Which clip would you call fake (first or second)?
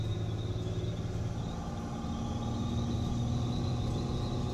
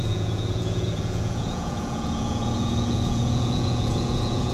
second